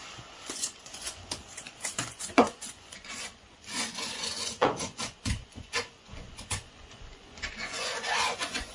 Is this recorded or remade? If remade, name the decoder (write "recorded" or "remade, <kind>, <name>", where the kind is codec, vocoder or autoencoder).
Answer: remade, vocoder, Vocos